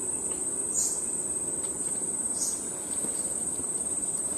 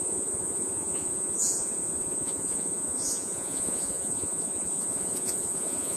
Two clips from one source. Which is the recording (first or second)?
first